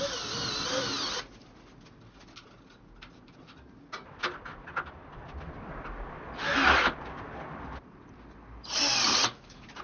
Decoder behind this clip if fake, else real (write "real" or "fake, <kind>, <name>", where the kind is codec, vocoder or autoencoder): real